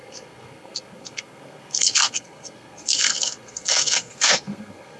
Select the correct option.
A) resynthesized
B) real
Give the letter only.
A